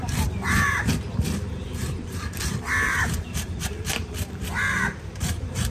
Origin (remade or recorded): remade